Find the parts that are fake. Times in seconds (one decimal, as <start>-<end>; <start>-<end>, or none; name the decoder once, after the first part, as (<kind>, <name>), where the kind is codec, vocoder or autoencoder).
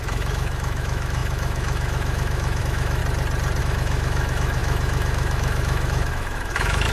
0.0-3.0 (autoencoder, DAC-VAE); 3.6-6.9